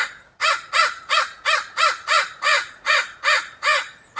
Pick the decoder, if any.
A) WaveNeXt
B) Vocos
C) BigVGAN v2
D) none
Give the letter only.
B